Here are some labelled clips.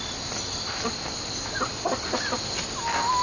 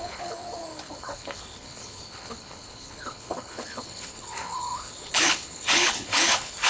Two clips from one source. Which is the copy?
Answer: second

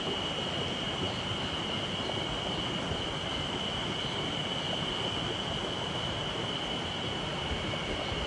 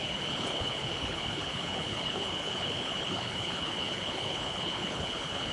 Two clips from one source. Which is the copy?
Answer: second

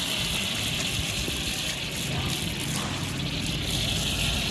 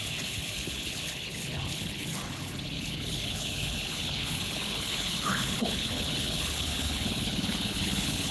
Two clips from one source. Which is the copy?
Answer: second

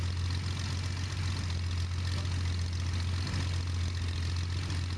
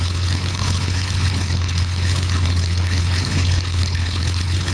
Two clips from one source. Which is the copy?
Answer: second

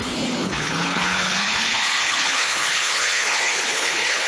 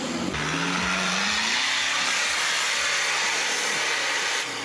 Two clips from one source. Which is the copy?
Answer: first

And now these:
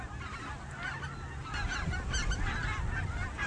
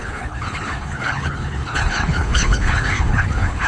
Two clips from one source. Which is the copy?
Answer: second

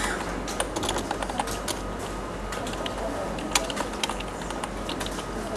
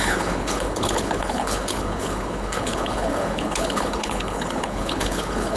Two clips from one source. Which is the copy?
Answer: second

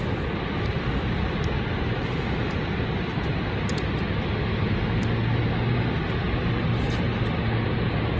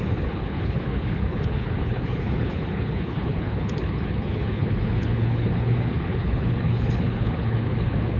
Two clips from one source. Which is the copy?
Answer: second